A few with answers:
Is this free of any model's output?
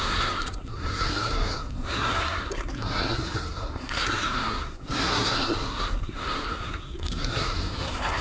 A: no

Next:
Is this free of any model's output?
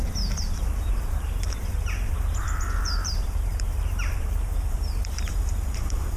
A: no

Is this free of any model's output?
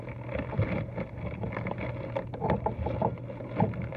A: yes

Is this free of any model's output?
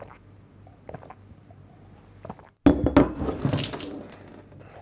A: yes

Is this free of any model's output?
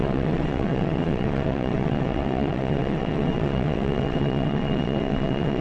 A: no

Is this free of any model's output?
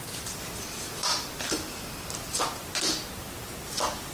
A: yes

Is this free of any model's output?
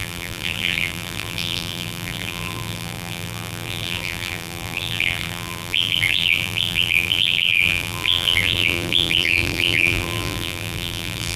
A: no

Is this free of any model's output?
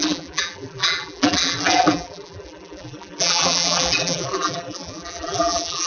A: no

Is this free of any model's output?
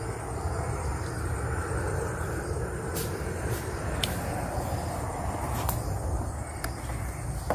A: yes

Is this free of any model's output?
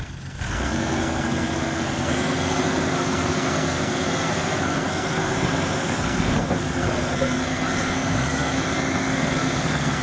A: no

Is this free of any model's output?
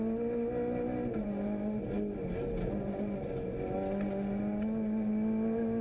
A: yes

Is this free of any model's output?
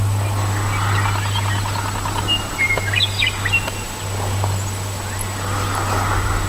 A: yes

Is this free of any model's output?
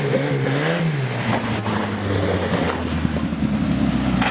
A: yes